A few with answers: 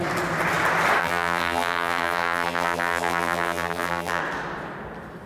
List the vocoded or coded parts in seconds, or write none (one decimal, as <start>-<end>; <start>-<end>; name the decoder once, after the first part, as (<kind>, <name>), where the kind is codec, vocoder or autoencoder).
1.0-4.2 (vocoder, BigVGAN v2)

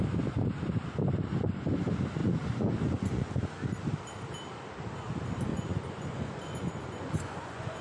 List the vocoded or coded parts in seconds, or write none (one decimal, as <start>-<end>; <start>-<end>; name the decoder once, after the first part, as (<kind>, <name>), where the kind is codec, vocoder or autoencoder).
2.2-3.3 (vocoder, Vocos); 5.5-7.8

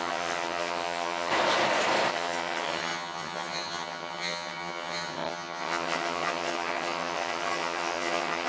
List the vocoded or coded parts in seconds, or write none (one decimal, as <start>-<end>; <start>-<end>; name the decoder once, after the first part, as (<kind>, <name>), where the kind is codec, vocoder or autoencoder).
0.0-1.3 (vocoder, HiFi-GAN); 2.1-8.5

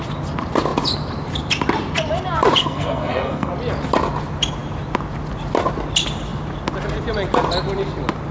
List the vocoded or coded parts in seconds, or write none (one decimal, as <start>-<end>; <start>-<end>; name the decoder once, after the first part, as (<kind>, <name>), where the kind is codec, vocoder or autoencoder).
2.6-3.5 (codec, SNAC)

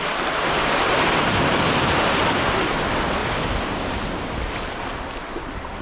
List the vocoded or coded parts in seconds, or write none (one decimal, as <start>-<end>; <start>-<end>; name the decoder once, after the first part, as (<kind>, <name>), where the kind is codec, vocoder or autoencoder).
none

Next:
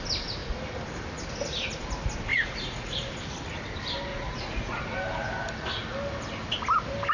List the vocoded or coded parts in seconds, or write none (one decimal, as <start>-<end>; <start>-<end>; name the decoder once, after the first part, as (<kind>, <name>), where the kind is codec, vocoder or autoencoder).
2.3-3.1 (vocoder, Vocos); 4.1-4.8

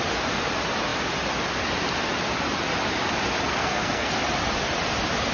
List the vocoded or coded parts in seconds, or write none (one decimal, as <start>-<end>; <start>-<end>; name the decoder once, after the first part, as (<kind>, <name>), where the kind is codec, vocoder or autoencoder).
3.5-4.1 (codec, SNAC)

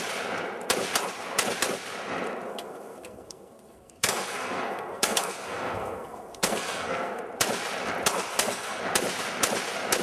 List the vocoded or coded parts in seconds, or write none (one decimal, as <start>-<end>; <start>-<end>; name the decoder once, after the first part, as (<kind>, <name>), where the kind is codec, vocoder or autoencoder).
2.5-7.2 (codec, SNAC); 8.3-8.8